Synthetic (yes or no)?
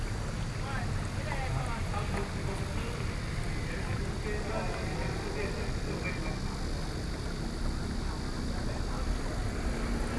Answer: no